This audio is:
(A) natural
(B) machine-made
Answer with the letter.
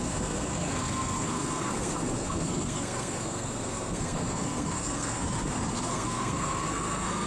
B